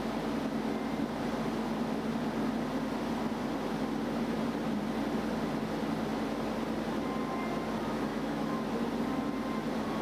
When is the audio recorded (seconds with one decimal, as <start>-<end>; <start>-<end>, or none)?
0.0-8.1; 8.6-10.0